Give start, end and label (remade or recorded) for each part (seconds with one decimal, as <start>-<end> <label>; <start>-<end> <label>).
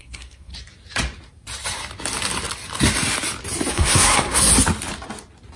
0.0-0.5 remade; 0.5-3.7 recorded; 3.7-4.5 remade; 4.5-5.6 recorded